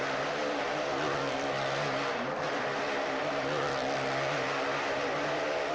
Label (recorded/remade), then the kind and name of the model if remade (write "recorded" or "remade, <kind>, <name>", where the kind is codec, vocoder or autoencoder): recorded